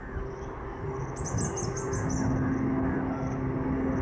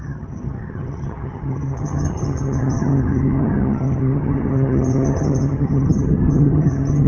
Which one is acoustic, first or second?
first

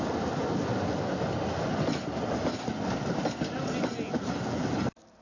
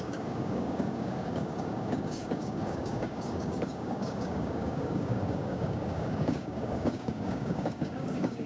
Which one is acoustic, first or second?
first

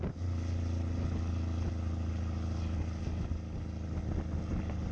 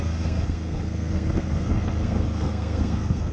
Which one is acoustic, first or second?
first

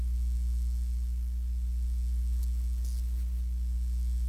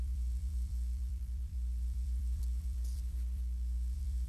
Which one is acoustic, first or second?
first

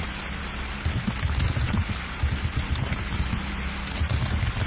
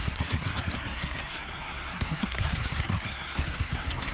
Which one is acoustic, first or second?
first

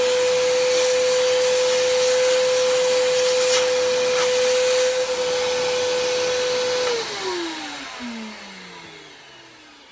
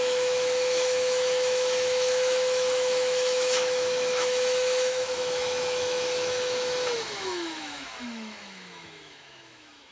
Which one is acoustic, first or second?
first